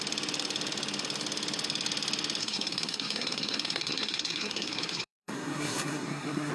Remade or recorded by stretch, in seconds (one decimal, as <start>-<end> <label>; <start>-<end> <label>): 0.0-2.4 recorded; 2.4-6.5 remade